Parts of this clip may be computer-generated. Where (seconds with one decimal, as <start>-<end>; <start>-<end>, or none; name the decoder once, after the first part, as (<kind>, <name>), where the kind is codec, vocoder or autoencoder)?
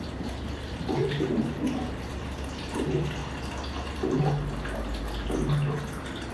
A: 0.0-3.2 (vocoder, BigVGAN v2)